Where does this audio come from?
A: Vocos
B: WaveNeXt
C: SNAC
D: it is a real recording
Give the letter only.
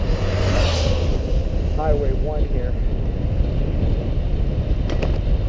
D